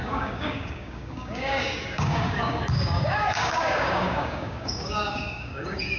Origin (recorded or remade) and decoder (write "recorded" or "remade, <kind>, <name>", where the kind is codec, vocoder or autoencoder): remade, codec, DAC